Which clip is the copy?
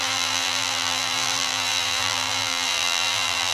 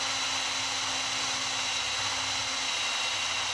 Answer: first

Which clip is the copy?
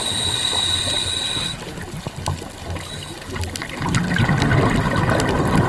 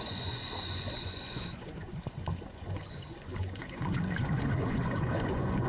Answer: second